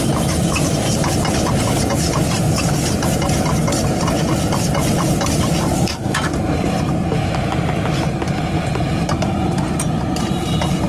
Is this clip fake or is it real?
real